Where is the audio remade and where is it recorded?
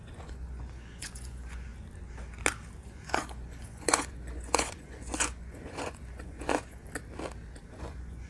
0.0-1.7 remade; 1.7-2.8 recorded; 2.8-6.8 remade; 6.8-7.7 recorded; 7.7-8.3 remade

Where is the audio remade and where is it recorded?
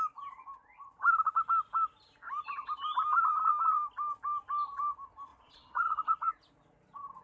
0.0-5.3 recorded; 5.3-6.3 remade; 6.3-7.2 recorded